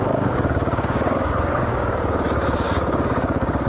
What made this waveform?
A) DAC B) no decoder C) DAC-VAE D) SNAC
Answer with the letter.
A